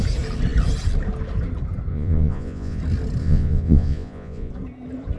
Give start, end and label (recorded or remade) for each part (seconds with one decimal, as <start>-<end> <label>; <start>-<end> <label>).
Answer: 0.0-1.9 recorded; 1.9-2.8 remade; 2.8-3.2 recorded; 3.2-4.5 remade; 4.5-5.2 recorded